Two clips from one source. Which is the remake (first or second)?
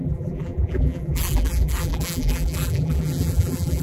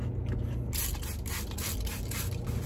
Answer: first